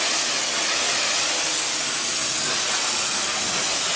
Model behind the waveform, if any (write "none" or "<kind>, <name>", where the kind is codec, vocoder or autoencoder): none